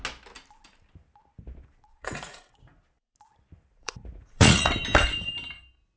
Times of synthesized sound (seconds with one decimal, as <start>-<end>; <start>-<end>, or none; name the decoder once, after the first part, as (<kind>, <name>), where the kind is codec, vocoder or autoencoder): 1.9-2.8 (vocoder, Vocos); 3.7-4.7